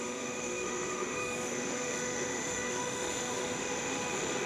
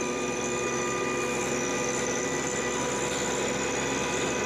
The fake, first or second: first